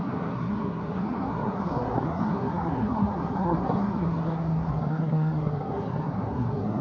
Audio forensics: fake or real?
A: fake